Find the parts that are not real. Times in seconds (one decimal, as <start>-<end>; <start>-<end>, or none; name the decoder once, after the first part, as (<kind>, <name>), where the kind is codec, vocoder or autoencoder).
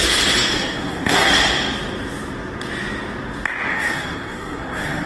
0.5-1.3 (codec, SNAC); 3.7-5.1